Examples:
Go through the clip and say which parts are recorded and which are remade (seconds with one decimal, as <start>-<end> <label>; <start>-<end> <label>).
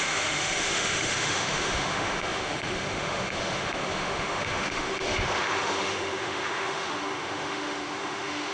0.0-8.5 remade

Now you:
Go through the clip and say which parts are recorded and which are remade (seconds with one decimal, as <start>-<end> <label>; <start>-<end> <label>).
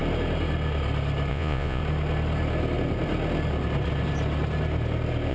0.0-1.3 recorded; 1.3-1.8 remade; 1.8-5.3 recorded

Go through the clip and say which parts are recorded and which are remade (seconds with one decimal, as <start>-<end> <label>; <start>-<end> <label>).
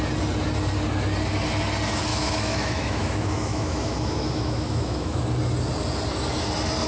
0.0-2.1 recorded; 2.1-5.2 remade; 5.2-6.9 recorded